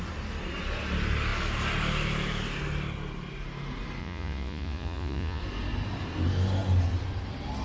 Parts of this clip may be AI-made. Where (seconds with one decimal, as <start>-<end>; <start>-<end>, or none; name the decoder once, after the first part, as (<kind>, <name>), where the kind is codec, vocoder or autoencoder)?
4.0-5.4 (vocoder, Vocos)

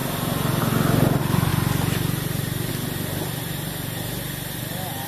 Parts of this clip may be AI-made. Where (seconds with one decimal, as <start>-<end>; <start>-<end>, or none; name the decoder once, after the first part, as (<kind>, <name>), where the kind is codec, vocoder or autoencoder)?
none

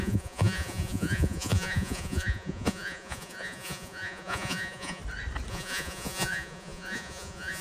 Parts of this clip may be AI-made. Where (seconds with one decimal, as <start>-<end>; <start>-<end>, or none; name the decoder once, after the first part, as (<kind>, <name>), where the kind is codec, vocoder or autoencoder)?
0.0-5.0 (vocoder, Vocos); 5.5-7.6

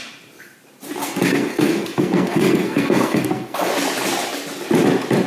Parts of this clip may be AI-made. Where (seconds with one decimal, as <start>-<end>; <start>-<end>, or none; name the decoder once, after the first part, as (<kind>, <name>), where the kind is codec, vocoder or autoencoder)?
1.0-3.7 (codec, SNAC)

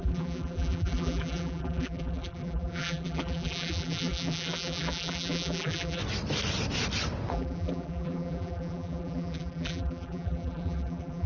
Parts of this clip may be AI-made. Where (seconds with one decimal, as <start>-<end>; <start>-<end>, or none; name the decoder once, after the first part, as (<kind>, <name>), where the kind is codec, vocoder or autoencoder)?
0.0-6.0 (vocoder, BigVGAN v2); 7.3-11.3

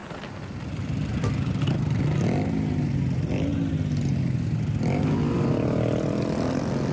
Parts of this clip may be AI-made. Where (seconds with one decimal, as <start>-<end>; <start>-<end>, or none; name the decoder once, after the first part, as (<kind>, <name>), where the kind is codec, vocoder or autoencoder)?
none

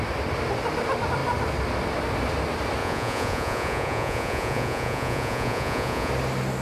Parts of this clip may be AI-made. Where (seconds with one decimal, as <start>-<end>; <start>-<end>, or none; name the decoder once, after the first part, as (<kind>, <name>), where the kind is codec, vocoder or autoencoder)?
2.8-6.1 (vocoder, Vocos)

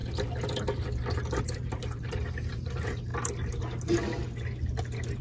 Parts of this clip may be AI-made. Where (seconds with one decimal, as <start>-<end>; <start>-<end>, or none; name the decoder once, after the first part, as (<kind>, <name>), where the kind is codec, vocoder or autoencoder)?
1.4-3.1 (vocoder, BigVGAN v2)